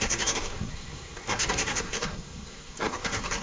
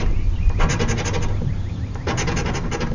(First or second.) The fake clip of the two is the first